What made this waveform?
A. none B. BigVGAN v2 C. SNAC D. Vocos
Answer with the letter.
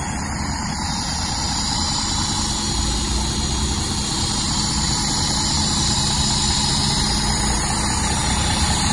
A